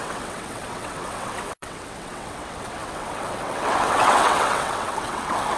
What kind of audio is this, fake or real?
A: fake